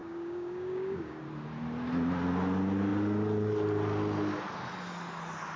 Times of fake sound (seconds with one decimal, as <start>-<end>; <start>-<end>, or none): 0.0-1.2